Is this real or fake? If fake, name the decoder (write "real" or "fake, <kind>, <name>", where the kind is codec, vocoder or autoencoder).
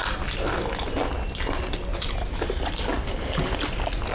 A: real